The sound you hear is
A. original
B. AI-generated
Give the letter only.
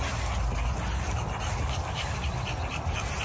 A